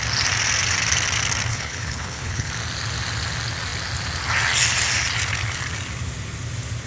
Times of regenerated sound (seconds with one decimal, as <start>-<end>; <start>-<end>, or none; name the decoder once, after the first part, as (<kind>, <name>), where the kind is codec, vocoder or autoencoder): 1.5-2.5 (codec, HILCodec)